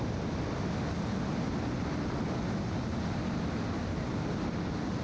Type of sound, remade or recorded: recorded